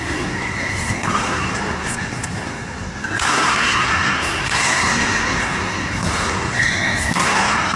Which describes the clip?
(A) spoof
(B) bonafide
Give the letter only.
A